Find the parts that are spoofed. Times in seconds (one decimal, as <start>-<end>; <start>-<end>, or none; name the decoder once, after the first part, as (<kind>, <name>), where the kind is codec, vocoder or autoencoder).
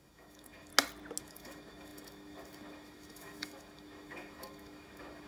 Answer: 0.0-0.7 (autoencoder, DAC-VAE); 1.2-5.3